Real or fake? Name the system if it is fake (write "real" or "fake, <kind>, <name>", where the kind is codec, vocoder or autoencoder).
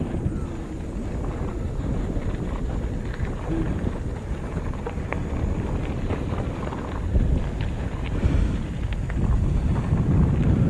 real